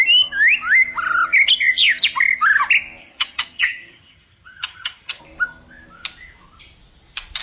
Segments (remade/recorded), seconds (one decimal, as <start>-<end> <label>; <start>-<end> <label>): 0.0-3.0 recorded; 3.0-5.2 remade; 5.2-7.4 recorded